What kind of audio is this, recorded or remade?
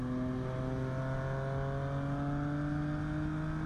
recorded